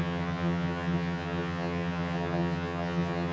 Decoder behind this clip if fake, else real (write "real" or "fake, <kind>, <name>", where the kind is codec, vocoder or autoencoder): fake, vocoder, HiFi-GAN